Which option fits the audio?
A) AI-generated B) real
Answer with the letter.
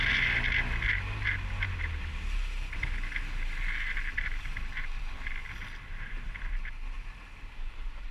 B